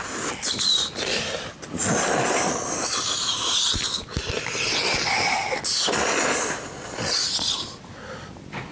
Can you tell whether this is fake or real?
real